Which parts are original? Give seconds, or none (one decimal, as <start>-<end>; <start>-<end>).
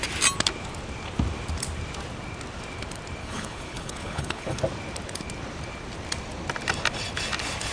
0.0-3.2; 4.6-7.7